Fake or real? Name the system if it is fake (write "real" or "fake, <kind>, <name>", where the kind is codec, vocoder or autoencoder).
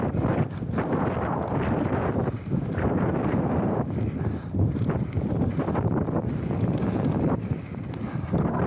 real